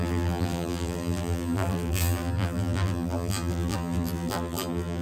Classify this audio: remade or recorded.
remade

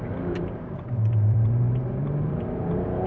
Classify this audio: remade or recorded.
remade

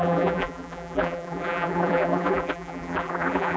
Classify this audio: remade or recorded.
remade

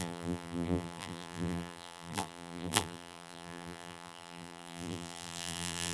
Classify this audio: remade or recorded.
remade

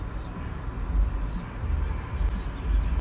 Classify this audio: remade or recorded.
recorded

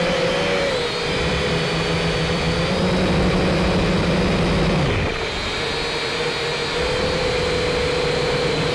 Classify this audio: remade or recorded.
remade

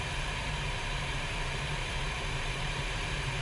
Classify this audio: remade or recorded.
remade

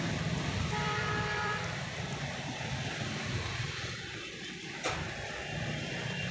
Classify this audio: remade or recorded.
remade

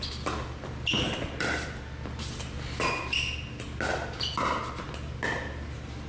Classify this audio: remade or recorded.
recorded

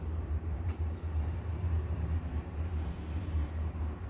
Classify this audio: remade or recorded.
remade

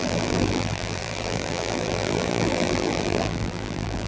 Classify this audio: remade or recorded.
remade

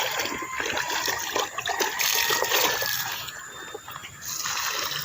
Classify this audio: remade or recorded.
recorded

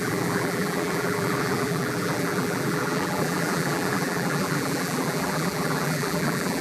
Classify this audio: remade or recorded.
remade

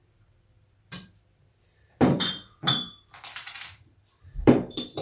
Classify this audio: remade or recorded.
remade